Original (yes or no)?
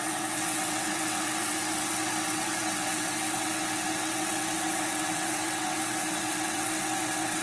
no